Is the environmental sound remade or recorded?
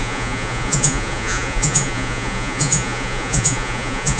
remade